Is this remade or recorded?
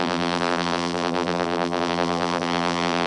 remade